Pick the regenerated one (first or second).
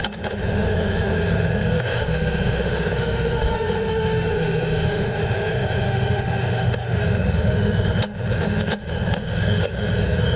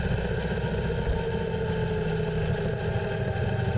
first